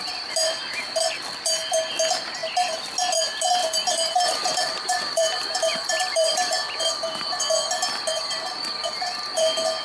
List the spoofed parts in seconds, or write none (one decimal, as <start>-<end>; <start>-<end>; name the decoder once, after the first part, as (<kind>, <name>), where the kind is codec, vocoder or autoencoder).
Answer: 3.6-7.4 (vocoder, BigVGAN v2); 8.1-8.7